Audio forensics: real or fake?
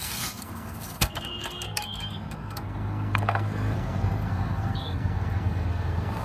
fake